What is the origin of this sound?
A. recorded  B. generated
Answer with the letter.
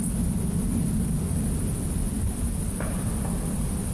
A